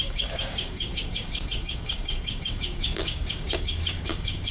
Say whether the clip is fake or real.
fake